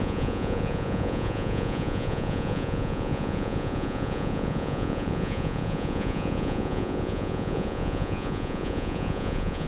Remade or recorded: remade